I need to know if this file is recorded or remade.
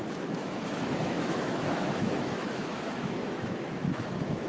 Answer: remade